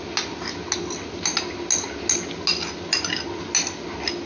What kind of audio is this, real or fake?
real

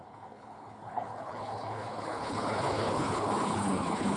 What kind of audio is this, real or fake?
fake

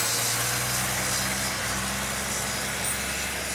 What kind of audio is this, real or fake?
real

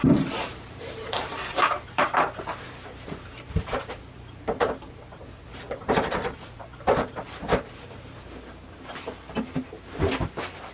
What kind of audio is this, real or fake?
fake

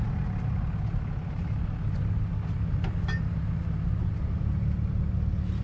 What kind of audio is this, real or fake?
real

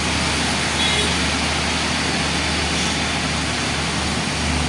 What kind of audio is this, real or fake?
real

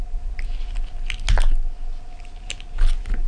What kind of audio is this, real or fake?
real